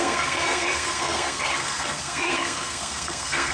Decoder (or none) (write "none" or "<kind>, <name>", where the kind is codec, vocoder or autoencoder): codec, SNAC